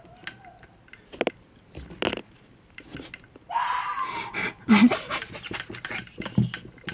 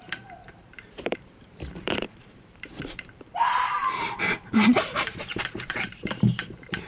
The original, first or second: first